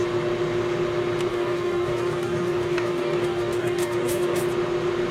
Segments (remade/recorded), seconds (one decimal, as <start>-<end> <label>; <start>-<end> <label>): 0.0-1.3 recorded; 1.3-4.4 remade; 4.4-5.1 recorded